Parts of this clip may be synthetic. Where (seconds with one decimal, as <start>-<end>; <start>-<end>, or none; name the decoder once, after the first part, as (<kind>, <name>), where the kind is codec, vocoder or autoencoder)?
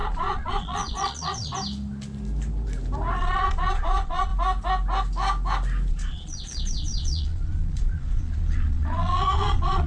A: 0.0-1.5 (vocoder, Vocos); 3.2-4.3; 5.9-9.9